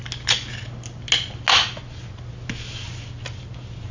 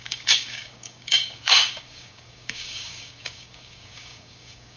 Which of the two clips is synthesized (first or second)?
second